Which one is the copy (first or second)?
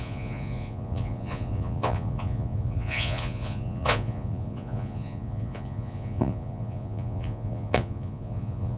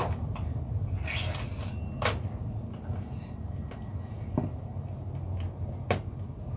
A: first